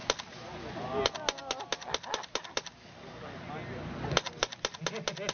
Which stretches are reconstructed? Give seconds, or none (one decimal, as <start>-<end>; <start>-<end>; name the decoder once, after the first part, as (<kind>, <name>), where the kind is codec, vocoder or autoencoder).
none

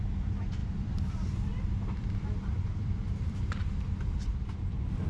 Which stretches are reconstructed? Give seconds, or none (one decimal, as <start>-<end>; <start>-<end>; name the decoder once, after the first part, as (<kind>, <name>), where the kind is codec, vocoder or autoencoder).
0.6-3.7 (vocoder, BigVGAN v2)